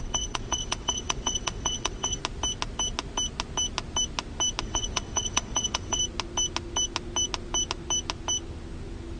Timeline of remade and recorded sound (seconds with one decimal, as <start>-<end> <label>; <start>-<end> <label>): 0.0-2.2 remade; 2.2-4.6 recorded; 4.6-6.0 remade; 6.0-9.2 recorded